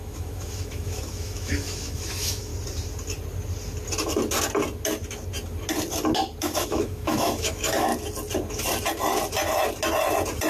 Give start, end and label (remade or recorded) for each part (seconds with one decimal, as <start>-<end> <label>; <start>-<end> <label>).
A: 0.0-2.5 remade; 2.5-6.4 recorded; 6.4-7.9 remade; 7.9-10.5 recorded